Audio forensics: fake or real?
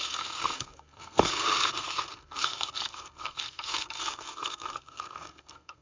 fake